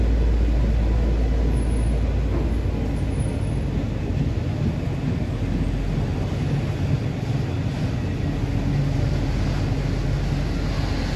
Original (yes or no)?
yes